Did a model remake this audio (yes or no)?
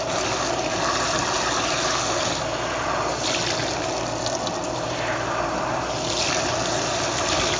no